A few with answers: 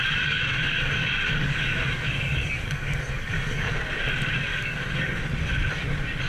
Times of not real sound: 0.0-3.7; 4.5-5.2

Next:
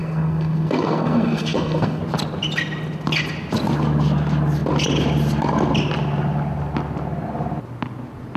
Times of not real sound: 0.0-2.0

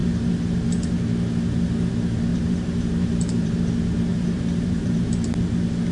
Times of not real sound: 2.3-3.5; 4.1-5.1

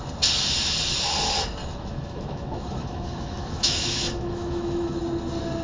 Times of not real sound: 1.6-5.0

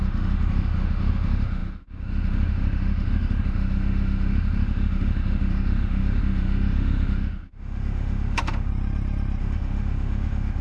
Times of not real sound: 0.0-8.7; 9.4-10.6